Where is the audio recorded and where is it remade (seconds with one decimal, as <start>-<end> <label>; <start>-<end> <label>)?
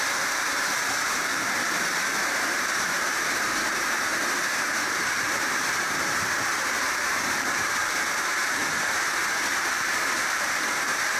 0.0-8.6 remade; 8.6-9.5 recorded; 9.5-11.2 remade